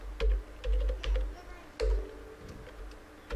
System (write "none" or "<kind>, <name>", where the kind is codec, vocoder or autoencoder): none